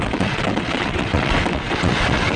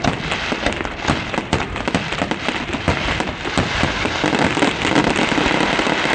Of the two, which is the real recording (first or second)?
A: second